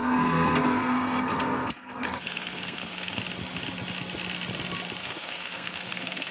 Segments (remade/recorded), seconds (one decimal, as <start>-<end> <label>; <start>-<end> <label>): 0.0-3.2 remade; 3.2-5.0 recorded; 5.0-6.3 remade